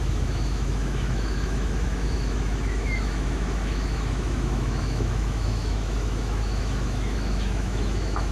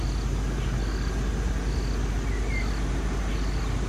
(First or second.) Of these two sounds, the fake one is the first